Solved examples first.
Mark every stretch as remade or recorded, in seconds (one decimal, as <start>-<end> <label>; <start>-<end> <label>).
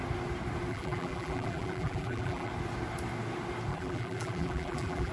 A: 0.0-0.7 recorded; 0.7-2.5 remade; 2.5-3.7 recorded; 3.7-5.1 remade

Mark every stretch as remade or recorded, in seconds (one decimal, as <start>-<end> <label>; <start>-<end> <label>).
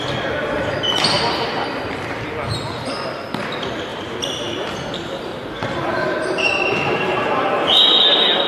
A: 0.0-5.3 recorded; 5.3-7.5 remade; 7.5-8.5 recorded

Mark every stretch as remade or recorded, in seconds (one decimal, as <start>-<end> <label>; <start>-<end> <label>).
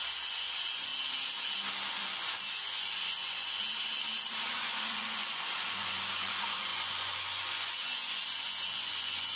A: 0.0-0.9 remade; 0.9-1.9 recorded; 1.9-3.6 remade; 3.6-4.5 recorded; 4.5-9.4 remade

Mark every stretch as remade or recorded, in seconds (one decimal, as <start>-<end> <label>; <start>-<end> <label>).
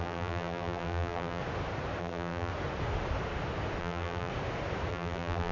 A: 0.0-1.4 remade; 1.4-2.0 recorded; 2.0-2.5 remade; 2.5-3.8 recorded; 3.8-4.3 remade; 4.3-4.9 recorded; 4.9-5.5 remade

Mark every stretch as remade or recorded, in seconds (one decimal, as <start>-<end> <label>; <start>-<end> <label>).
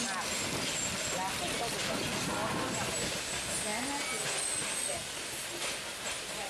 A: 0.0-2.4 recorded; 2.4-3.2 remade; 3.2-6.5 recorded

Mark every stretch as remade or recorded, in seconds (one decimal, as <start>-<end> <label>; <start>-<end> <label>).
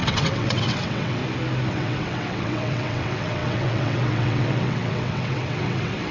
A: 0.0-1.2 remade; 1.2-1.7 recorded; 1.7-6.1 remade